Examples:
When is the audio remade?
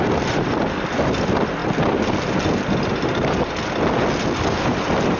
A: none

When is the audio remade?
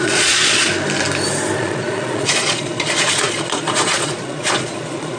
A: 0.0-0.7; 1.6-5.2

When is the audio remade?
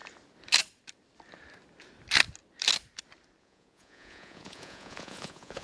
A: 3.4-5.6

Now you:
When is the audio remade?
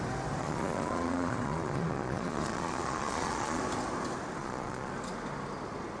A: 0.4-3.6; 4.4-4.9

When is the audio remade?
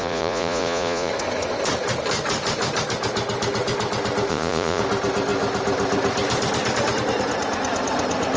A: 0.0-1.1; 4.3-4.8